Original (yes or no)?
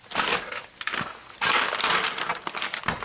yes